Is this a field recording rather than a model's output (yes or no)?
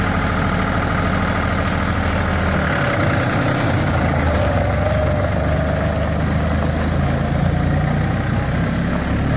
yes